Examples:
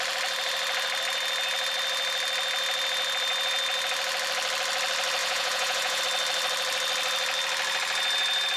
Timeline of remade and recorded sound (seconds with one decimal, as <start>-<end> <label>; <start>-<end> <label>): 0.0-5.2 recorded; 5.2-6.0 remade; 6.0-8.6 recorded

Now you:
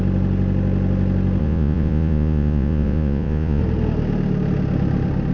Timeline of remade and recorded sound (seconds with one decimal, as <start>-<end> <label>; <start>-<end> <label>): 0.0-1.4 recorded; 1.4-3.6 remade; 3.6-5.3 recorded

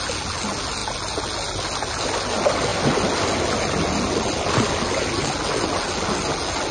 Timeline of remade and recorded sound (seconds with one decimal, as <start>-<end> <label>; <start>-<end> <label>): 0.0-6.7 recorded